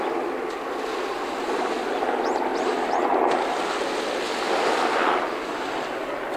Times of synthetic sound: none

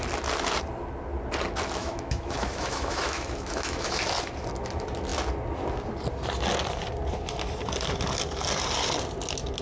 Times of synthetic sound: 1.8-4.0 (autoencoder, DAC-VAE)

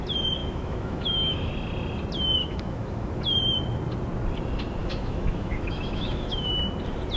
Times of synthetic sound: 0.4-1.5 (autoencoder, DAC-VAE); 2.4-3.1; 4.8-6.5

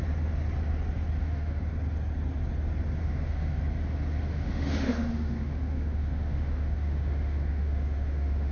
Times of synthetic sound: 1.2-1.7 (autoencoder, DAC-VAE); 3.0-3.6; 4.3-8.5

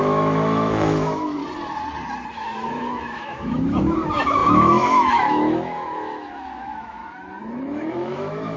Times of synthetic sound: 0.0-1.4 (autoencoder, DAC-VAE); 2.3-7.0; 7.6-8.6

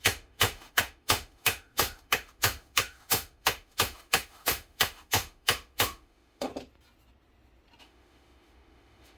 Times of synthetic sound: 0.0-6.5 (autoencoder, DAC-VAE); 7.8-9.2

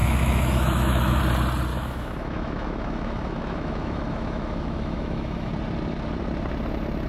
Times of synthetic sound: 0.0-1.2 (autoencoder, DAC-VAE); 1.7-5.5